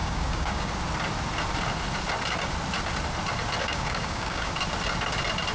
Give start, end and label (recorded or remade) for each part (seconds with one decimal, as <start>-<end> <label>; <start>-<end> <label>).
0.0-0.7 remade; 0.7-3.6 recorded; 3.6-4.5 remade; 4.5-5.5 recorded